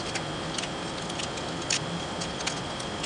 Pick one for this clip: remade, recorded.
recorded